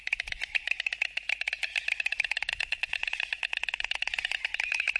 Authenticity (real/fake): real